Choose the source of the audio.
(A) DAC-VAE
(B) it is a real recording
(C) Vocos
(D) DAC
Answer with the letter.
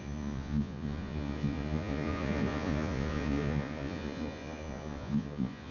C